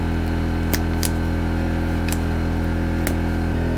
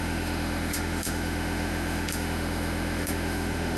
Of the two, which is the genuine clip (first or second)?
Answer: first